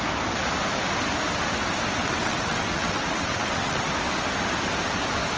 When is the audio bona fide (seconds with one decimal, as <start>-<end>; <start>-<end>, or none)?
0.0-2.0; 3.9-5.4

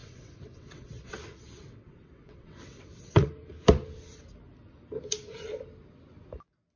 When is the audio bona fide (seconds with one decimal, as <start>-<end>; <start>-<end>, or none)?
3.3-6.8

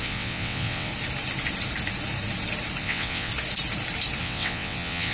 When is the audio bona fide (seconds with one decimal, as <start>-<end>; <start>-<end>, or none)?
0.9-2.8; 3.3-4.2

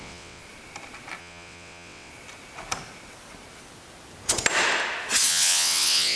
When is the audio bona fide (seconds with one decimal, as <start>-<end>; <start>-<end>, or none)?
0.4-1.2; 2.1-5.3